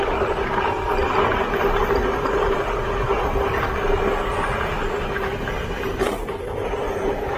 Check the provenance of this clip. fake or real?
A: real